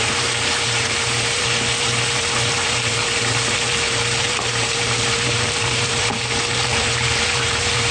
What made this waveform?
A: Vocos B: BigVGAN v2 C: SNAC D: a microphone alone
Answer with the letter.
B